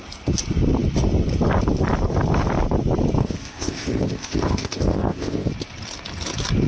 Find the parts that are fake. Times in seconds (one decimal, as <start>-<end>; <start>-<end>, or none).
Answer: 3.2-5.5